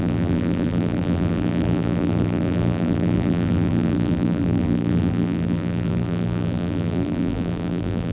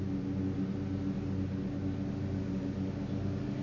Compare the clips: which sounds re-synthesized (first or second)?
first